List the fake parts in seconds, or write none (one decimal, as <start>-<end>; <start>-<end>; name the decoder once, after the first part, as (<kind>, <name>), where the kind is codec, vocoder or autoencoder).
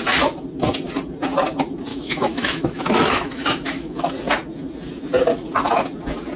1.9-4.1 (autoencoder, DAC-VAE)